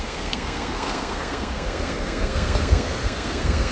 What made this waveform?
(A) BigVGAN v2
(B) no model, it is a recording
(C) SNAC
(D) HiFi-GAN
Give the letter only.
C